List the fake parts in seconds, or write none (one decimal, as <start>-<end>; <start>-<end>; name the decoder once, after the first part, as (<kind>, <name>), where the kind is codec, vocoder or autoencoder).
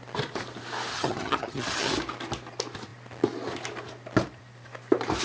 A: 0.9-1.9 (vocoder, HiFi-GAN)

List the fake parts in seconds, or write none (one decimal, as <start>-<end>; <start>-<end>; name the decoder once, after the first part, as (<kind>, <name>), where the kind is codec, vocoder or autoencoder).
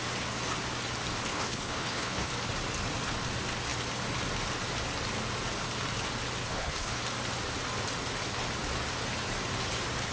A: 1.3-2.3 (codec, HILCodec); 6.4-7.0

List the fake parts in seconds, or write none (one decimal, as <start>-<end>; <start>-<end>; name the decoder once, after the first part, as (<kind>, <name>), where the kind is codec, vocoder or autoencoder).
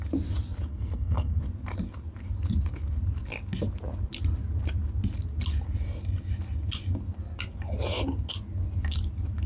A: 0.7-1.4 (codec, SNAC)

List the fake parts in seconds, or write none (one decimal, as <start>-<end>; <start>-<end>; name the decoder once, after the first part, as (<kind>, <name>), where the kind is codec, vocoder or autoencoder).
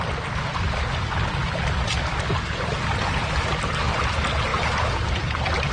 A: none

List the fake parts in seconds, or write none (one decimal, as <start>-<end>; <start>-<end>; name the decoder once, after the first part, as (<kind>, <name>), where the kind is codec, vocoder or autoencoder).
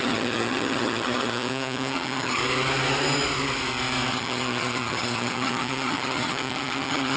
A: 0.0-2.4 (vocoder, HiFi-GAN); 4.1-7.2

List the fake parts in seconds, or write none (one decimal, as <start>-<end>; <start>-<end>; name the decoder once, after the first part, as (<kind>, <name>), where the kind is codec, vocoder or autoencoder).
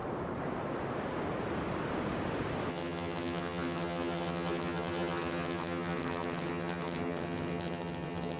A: 2.7-8.4 (vocoder, HiFi-GAN)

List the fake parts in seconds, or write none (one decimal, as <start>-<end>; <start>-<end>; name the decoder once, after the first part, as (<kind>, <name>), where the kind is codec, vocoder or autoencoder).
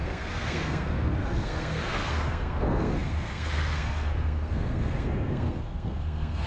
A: 0.0-6.5 (codec, SNAC)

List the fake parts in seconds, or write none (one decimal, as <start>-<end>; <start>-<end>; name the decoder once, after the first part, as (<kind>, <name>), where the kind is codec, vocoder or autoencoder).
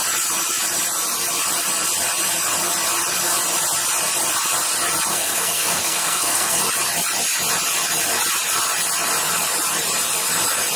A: 5.1-6.6 (codec, SNAC)